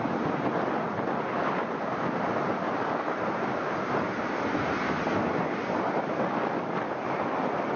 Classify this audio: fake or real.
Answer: real